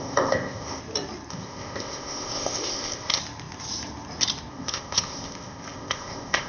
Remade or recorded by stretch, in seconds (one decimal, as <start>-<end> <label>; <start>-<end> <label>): 0.0-0.8 remade; 0.8-1.3 recorded; 1.3-3.2 remade; 3.2-4.5 recorded; 4.5-6.5 remade